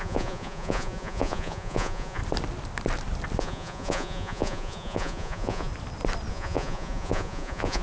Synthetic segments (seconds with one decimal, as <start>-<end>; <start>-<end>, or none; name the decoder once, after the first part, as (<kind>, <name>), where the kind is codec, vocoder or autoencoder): 0.0-2.2 (vocoder, Vocos); 3.4-5.7; 6.3-7.8